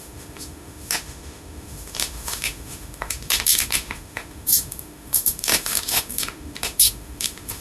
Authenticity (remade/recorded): remade